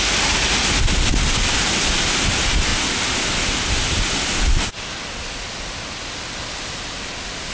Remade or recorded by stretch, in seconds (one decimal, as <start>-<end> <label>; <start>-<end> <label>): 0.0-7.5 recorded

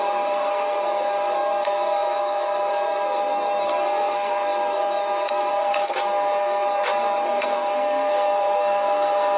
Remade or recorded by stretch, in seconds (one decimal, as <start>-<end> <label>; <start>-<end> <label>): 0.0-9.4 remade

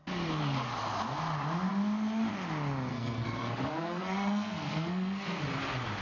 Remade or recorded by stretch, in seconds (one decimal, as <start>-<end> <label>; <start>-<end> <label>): 0.0-2.9 recorded; 2.9-5.4 remade; 5.4-6.0 recorded

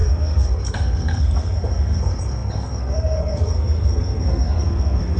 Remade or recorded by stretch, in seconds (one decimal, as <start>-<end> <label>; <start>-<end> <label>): 0.0-5.2 remade

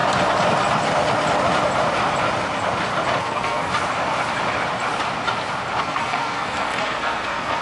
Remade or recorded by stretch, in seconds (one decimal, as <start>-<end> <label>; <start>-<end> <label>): 0.0-3.2 recorded; 3.2-3.7 remade; 3.7-5.8 recorded; 5.8-7.6 remade